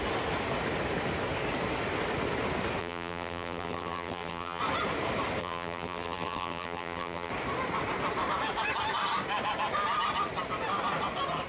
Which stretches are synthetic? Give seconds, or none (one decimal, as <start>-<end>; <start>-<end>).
2.8-4.6; 5.4-7.3